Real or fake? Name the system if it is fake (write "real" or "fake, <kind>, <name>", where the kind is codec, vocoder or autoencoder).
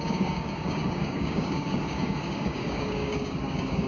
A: fake, codec, DAC